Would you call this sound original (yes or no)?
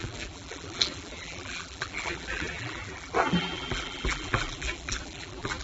no